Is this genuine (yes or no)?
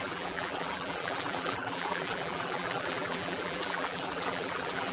no